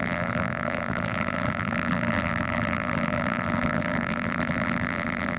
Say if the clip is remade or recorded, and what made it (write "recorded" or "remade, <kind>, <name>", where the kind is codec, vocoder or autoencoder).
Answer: remade, vocoder, BigVGAN v2